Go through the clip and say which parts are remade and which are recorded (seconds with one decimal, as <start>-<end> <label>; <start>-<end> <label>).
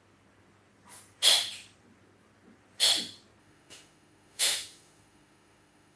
0.0-3.4 recorded; 3.4-6.0 remade